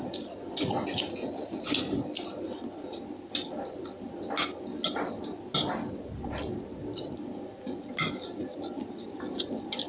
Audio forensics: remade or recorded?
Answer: recorded